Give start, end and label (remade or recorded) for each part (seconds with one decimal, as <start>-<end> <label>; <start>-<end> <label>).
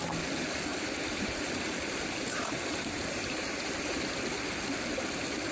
0.0-0.7 recorded; 0.7-4.0 remade; 4.0-5.5 recorded